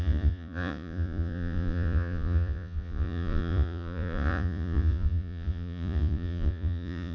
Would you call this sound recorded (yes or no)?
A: no